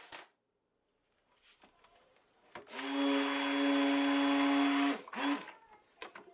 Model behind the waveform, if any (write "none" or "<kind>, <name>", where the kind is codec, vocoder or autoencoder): none